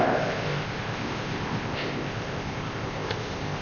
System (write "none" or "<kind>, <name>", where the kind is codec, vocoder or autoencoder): codec, ZipCodec